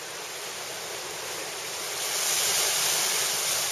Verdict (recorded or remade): recorded